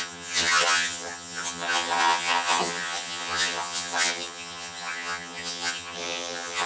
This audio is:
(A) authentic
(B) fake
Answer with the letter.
B